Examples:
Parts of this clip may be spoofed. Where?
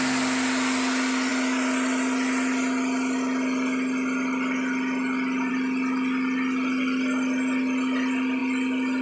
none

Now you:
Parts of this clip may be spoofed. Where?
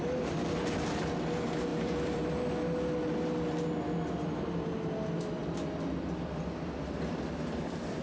1.7-2.2; 5.4-8.0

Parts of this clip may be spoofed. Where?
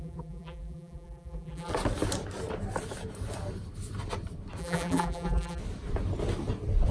0.0-1.7; 4.6-5.6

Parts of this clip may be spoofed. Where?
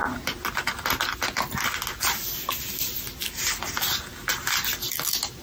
none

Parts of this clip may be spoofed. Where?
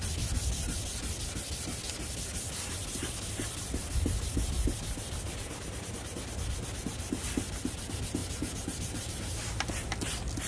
8.2-9.2